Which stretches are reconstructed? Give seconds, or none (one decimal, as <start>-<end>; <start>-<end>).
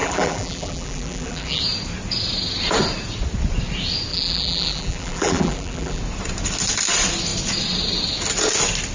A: 0.0-1.6; 4.1-6.0